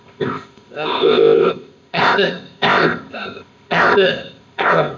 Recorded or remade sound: remade